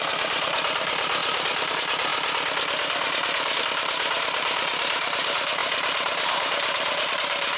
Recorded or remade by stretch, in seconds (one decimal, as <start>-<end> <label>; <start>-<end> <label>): 0.0-2.1 remade; 2.1-3.6 recorded; 3.6-7.6 remade